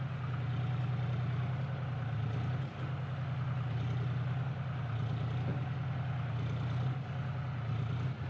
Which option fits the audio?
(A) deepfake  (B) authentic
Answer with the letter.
B